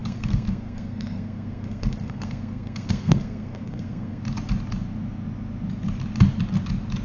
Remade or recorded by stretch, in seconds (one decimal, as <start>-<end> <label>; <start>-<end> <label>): 0.0-4.2 remade; 4.2-7.0 recorded